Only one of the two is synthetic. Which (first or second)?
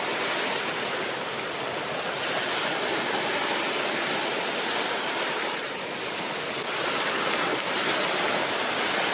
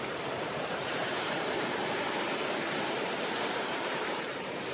second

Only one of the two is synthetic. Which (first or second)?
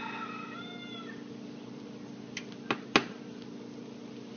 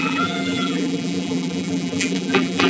second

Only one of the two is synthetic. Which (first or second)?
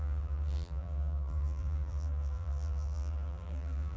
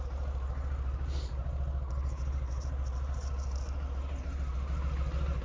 first